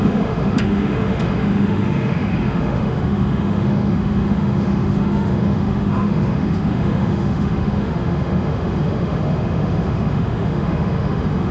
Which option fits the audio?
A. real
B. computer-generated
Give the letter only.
B